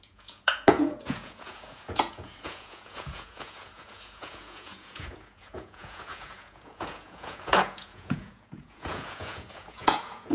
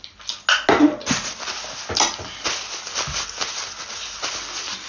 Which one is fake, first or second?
first